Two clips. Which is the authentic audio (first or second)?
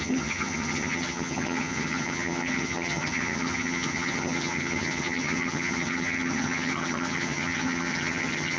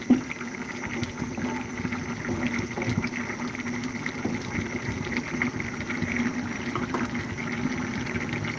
second